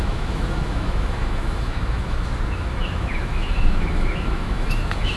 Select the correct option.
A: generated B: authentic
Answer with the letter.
A